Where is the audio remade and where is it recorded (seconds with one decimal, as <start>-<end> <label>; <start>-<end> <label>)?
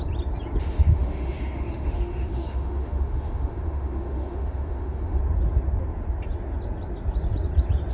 0.0-0.6 recorded; 0.6-5.2 remade; 5.2-7.9 recorded